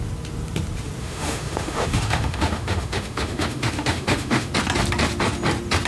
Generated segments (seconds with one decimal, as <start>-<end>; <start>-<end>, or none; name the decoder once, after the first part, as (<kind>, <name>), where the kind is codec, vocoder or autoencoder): 1.0-4.5 (autoencoder, DAC-VAE)